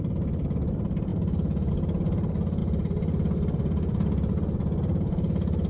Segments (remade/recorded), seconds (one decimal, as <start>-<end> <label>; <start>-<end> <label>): 0.0-5.7 recorded